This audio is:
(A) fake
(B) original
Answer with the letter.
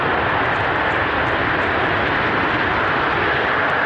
B